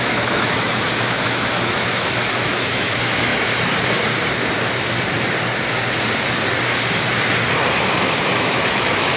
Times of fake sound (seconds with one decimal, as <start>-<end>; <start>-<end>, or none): 0.0-3.3; 8.3-9.2